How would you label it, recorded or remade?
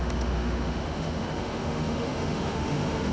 remade